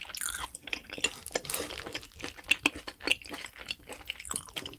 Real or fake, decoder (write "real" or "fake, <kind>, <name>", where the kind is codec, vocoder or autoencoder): real